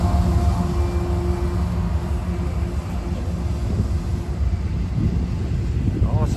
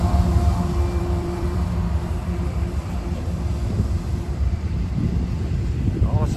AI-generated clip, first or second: second